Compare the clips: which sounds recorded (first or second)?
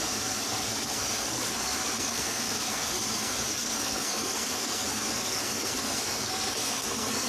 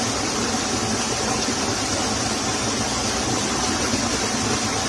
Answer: second